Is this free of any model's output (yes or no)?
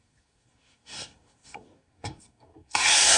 no